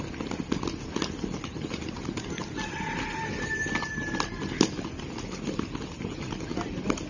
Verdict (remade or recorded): recorded